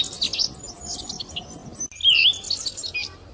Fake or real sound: real